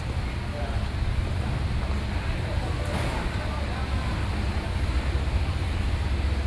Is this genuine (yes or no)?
yes